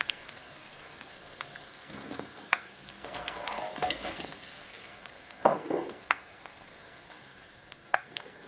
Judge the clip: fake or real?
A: fake